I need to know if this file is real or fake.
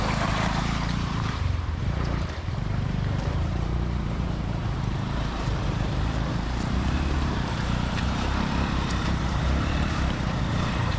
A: fake